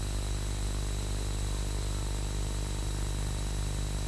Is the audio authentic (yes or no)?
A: yes